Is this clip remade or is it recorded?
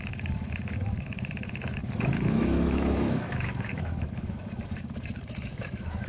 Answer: remade